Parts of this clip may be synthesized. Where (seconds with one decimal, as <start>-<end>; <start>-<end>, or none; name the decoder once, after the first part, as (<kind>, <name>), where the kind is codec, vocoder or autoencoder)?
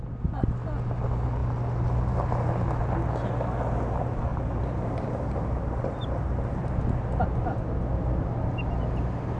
4.3-6.8 (vocoder, BigVGAN v2)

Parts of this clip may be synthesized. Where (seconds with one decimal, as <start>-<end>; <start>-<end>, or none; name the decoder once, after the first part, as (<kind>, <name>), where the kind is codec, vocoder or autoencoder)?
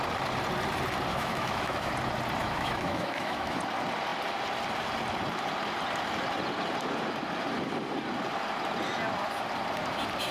1.1-1.9 (autoencoder, DAC-VAE); 2.4-3.6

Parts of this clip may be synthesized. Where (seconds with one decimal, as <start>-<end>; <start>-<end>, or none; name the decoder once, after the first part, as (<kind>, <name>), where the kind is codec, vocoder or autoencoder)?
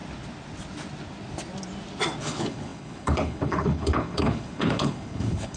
2.2-5.6 (codec, HILCodec)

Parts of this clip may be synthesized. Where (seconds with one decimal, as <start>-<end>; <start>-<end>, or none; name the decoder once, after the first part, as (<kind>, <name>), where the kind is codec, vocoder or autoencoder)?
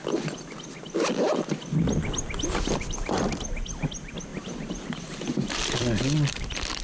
4.3-6.8 (vocoder, BigVGAN v2)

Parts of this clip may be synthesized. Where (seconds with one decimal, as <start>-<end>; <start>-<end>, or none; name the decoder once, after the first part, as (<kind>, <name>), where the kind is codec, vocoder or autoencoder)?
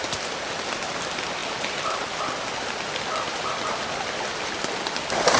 none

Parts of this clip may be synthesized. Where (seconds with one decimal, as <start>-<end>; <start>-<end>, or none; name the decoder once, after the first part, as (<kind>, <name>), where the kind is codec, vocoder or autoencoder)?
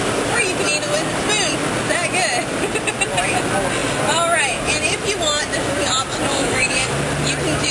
6.3-6.9 (codec, DAC)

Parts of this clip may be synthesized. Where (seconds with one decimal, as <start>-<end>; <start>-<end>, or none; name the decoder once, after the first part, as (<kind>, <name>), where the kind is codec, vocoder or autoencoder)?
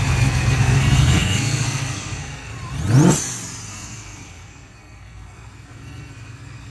0.0-2.5 (codec, SNAC); 3.7-6.7